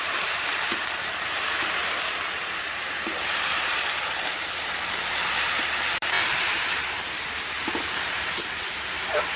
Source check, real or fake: fake